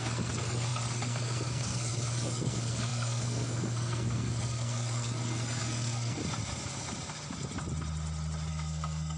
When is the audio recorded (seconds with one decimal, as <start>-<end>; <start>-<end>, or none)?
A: 6.2-8.5